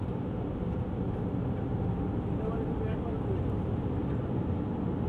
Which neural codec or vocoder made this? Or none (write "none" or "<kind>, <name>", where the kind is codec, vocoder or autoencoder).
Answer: none